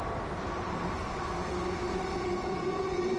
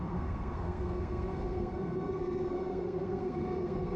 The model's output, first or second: second